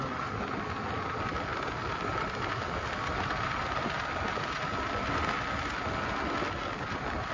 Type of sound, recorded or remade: recorded